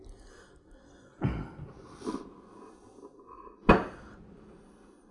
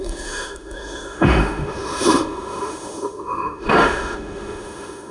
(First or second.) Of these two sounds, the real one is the first